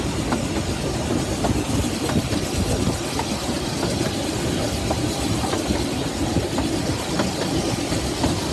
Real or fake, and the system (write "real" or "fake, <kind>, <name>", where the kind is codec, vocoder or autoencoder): real